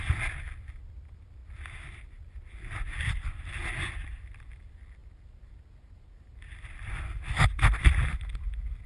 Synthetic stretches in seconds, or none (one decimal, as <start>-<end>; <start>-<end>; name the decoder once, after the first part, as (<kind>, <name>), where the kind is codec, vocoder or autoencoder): none

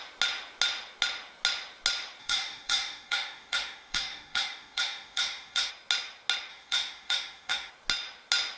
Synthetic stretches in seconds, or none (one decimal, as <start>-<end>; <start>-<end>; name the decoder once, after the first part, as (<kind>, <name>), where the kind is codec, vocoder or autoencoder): 2.2-5.7 (autoencoder, DAC-VAE); 6.5-7.7

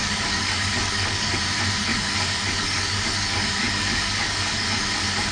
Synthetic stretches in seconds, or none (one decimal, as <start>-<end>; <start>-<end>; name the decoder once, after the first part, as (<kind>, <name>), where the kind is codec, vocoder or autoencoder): 0.0-1.4 (codec, DAC); 1.9-5.3

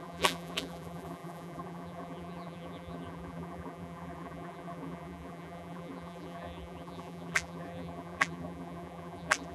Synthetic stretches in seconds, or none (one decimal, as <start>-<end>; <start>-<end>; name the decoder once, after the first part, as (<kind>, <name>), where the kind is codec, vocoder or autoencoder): 0.0-9.5 (vocoder, BigVGAN v2)

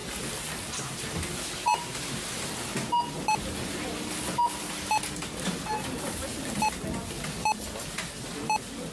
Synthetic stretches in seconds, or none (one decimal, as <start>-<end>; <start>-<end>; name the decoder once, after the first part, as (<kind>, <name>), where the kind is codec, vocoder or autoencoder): none